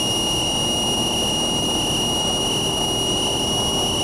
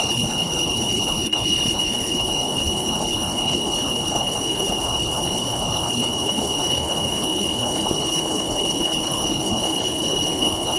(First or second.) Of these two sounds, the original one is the first